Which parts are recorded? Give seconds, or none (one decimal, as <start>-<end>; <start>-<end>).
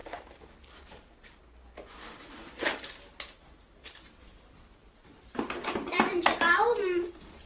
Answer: 1.4-2.7; 7.1-7.5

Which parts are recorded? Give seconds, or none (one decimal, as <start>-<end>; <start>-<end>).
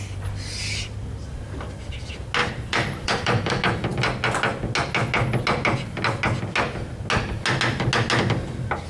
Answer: 0.0-2.4; 3.5-8.9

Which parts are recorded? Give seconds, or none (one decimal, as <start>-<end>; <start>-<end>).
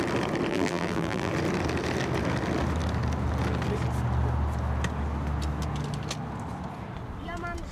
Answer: 0.0-0.5; 1.3-7.7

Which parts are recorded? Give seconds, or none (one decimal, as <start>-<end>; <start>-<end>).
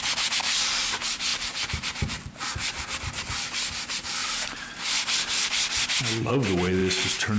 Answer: 0.0-7.4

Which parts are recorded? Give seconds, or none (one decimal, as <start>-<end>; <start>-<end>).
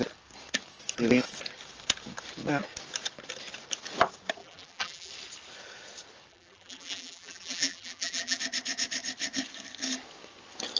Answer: 0.0-4.4; 5.1-6.3; 8.4-10.8